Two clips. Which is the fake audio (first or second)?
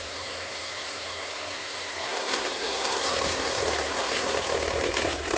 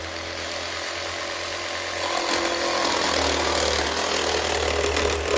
first